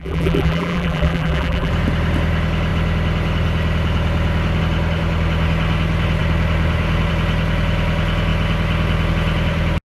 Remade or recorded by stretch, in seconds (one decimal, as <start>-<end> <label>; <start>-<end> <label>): 0.0-1.7 remade; 1.7-9.9 recorded